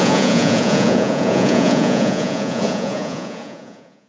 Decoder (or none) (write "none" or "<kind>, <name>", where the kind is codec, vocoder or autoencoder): vocoder, Vocos